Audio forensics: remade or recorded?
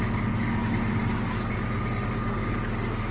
recorded